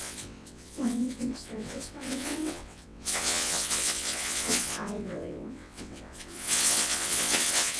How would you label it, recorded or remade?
remade